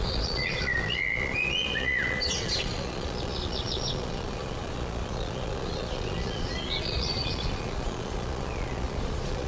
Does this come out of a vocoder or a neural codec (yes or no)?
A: yes